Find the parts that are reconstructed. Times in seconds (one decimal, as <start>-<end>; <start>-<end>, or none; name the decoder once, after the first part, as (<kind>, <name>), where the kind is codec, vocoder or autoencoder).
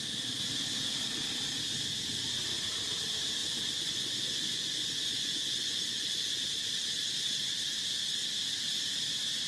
3.4-6.4 (vocoder, Vocos)